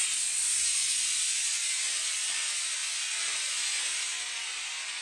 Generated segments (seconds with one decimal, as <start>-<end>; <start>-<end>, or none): none